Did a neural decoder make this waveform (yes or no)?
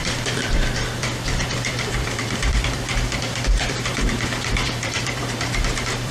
yes